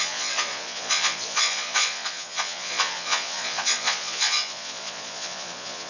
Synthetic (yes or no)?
yes